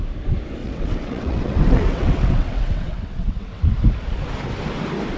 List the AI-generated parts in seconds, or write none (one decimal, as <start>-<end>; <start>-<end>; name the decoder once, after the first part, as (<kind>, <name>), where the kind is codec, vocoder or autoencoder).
0.6-3.7 (vocoder, WaveNeXt)